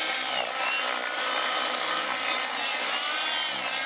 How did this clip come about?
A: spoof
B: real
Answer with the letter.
B